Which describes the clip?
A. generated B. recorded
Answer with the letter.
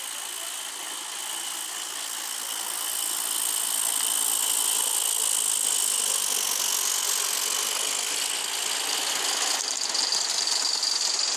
B